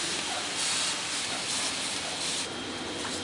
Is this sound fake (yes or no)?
no